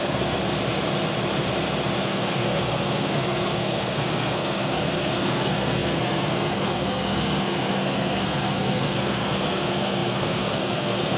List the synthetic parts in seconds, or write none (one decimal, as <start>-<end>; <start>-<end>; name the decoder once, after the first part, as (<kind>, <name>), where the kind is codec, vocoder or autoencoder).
0.0-0.4 (codec, SNAC); 2.0-11.2